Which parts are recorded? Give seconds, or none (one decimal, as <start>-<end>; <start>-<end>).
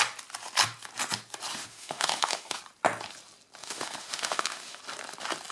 0.0-1.5; 2.6-3.6; 4.8-5.5